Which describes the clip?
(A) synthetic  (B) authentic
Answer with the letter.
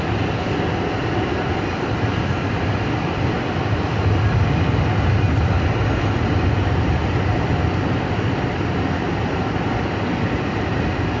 B